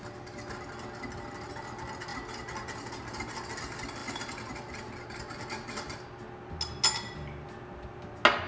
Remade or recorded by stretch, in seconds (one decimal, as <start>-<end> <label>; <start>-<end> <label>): 0.0-8.5 recorded